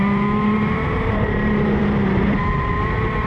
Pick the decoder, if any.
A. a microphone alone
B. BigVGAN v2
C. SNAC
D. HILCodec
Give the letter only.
B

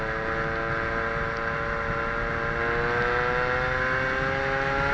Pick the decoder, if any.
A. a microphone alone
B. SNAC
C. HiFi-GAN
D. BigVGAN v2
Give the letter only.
A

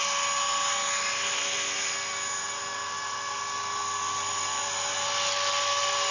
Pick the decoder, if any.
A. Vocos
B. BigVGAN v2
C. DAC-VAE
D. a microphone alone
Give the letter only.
D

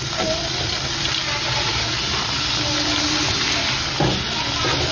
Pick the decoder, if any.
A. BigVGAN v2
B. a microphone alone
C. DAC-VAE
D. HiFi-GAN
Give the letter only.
B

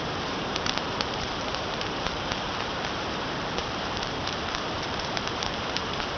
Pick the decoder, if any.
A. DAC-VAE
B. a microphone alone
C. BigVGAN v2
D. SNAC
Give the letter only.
C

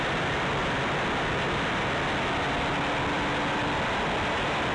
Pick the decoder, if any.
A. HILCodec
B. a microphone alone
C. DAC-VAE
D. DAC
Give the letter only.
B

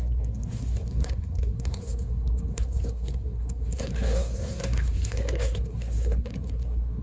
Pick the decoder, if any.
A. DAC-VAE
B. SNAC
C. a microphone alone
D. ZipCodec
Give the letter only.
B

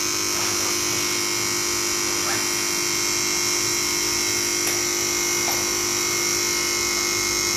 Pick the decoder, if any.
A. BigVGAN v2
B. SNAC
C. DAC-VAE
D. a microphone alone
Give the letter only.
D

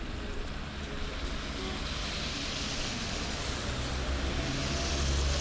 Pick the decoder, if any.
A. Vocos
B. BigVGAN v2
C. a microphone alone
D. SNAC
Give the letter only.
C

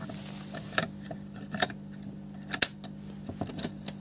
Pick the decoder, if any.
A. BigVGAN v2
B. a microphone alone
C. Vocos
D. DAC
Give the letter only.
B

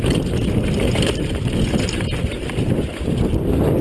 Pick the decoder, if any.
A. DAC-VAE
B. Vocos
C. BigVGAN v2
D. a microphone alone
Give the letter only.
D